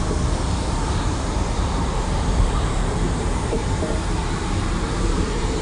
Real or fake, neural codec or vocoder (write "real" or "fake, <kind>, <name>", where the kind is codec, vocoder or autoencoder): fake, vocoder, BigVGAN v2